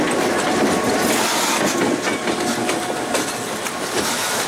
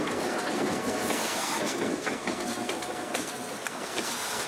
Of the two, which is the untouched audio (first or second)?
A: first